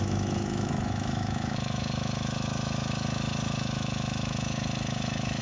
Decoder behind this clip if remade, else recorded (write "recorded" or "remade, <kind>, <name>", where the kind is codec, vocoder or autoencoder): remade, autoencoder, DAC-VAE